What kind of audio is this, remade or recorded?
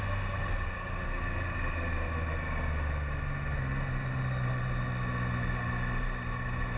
recorded